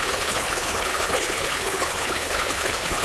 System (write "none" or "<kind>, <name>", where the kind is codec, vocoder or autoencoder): codec, HILCodec